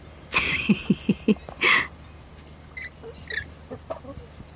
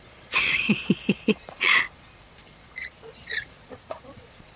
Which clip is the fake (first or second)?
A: second